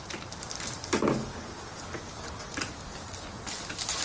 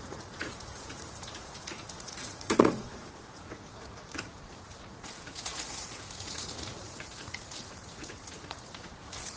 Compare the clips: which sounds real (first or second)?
first